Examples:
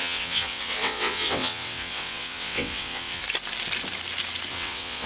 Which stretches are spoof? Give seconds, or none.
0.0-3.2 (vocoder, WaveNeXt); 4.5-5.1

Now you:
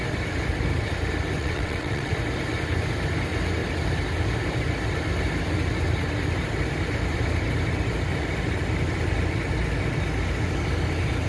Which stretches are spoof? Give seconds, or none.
1.4-2.1 (vocoder, WaveNeXt)

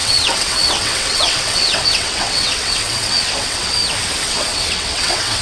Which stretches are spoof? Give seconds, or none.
0.0-3.8 (vocoder, WaveNeXt); 4.3-5.4

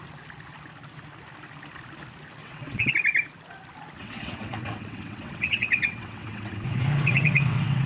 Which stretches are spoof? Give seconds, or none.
2.4-2.9 (vocoder, WaveNeXt); 4.0-7.9

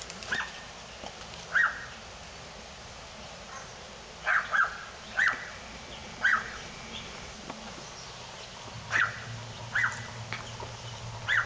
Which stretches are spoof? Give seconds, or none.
none

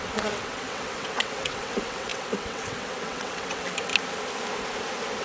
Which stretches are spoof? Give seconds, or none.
0.0-3.9 (vocoder, WaveNeXt)

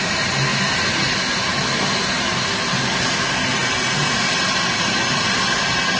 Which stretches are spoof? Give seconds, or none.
none

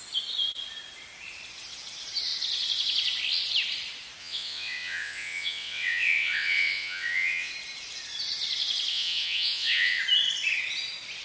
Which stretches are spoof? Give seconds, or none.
4.2-7.5 (vocoder, WaveNeXt); 8.9-10.0